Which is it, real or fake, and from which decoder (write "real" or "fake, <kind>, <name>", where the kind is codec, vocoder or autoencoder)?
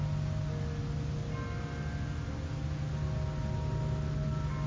real